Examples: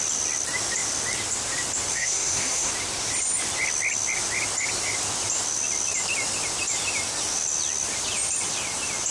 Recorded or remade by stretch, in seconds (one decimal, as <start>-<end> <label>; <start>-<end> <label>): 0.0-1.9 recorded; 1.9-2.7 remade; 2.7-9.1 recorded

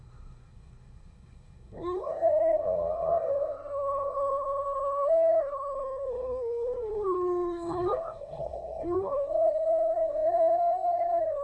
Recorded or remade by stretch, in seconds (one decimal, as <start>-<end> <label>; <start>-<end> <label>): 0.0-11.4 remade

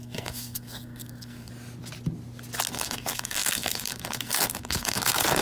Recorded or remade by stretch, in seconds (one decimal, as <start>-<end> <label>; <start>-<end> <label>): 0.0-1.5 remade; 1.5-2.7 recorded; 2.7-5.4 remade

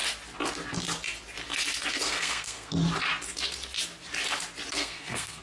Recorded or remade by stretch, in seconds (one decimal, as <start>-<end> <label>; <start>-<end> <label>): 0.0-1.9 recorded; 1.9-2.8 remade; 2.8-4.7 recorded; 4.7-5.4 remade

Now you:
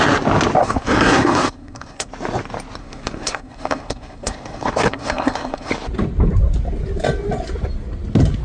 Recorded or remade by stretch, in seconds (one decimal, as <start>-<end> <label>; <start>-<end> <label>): 0.0-0.6 recorded; 0.6-2.1 remade; 2.1-2.8 recorded; 2.8-5.7 remade; 5.7-8.4 recorded

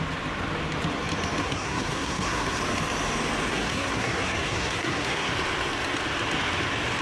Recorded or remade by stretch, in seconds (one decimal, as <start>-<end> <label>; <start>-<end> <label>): 0.0-1.4 recorded; 1.4-2.6 remade; 2.6-3.5 recorded; 3.5-5.3 remade; 5.3-7.0 recorded

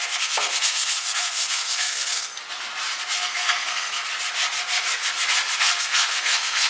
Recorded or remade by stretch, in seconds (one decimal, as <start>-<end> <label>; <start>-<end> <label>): 0.0-2.4 remade; 2.4-3.2 recorded; 3.2-4.0 remade; 4.0-5.6 recorded; 5.6-6.7 remade

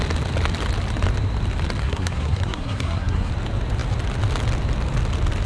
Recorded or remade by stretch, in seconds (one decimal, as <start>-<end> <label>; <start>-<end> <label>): 0.0-1.8 recorded; 1.8-3.3 remade; 3.3-5.5 recorded